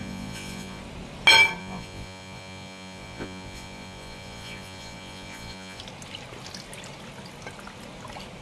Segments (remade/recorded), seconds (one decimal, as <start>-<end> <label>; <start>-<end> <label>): 0.0-0.8 remade; 0.8-1.6 recorded; 1.6-5.8 remade; 5.8-8.4 recorded